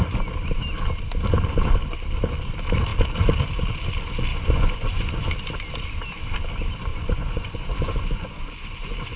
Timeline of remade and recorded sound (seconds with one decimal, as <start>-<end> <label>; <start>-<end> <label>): 0.0-4.3 recorded; 4.3-5.1 remade; 5.1-6.9 recorded; 6.9-9.2 remade